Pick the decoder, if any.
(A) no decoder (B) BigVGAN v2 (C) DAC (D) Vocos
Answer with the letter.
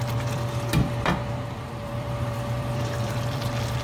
B